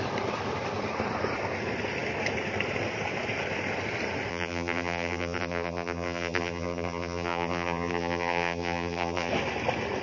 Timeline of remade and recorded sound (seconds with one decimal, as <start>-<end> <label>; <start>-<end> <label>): 0.0-4.3 recorded; 4.3-9.3 remade; 9.3-10.0 recorded